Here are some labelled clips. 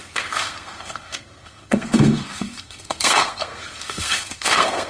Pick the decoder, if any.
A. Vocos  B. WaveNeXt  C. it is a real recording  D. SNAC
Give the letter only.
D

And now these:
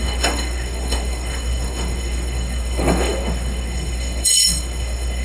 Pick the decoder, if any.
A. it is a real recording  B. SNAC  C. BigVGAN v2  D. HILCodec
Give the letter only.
B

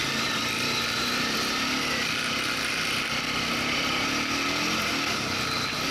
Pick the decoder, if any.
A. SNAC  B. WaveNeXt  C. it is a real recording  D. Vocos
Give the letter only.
C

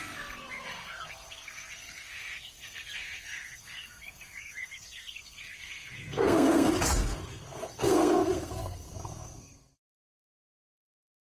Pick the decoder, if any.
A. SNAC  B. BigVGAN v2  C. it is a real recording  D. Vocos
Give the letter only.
A